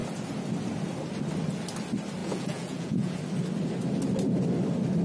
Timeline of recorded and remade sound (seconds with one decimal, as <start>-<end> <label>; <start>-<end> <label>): 0.0-2.2 recorded; 2.2-3.2 remade; 3.2-5.0 recorded

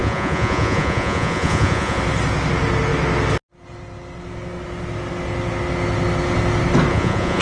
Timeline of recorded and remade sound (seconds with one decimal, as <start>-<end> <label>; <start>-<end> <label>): 0.0-2.0 remade; 2.0-6.9 recorded; 6.9-7.4 remade